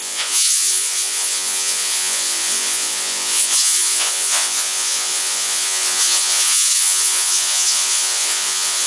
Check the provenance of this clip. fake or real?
fake